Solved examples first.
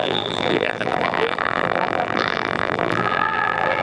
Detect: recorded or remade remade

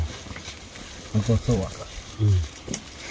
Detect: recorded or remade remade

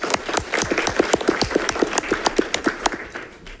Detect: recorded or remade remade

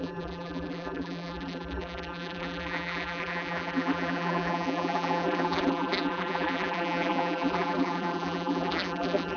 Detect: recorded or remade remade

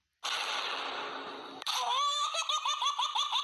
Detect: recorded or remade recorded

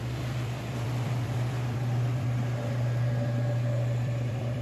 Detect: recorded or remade remade